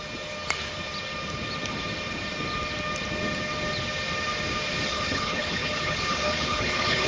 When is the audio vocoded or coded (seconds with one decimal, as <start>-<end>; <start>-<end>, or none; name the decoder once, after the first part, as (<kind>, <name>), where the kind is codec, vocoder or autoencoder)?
4.9-7.1 (codec, HILCodec)